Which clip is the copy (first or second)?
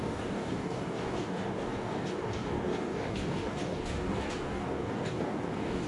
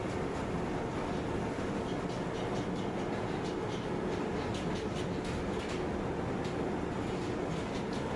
first